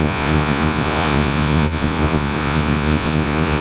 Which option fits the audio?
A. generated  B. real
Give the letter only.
A